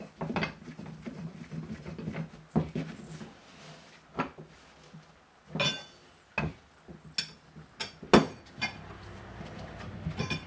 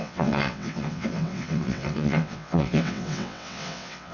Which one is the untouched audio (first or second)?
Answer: first